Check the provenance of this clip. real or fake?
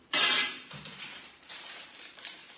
fake